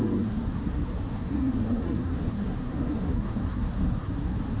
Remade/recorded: remade